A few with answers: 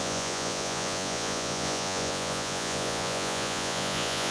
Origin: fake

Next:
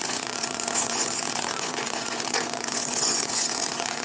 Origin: fake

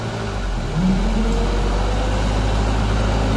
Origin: real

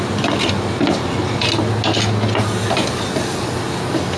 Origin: real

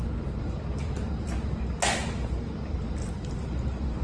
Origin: real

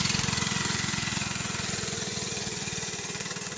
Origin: fake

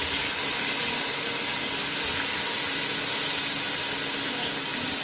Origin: real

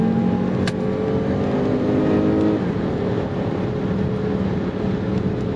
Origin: real